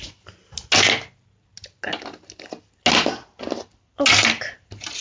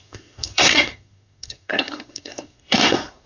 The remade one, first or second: second